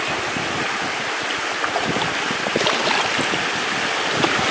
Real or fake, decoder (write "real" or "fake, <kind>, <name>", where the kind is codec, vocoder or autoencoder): real